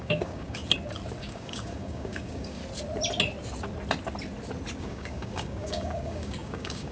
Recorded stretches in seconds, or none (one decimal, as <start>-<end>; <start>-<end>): 0.6-1.2; 2.6-4.8